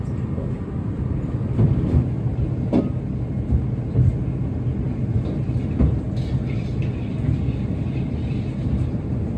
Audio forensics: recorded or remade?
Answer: recorded